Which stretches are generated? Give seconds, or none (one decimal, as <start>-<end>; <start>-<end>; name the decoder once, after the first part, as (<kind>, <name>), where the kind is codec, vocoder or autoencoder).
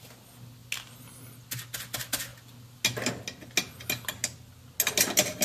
none